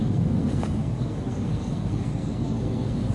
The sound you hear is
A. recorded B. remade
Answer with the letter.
B